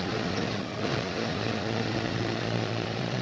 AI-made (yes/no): yes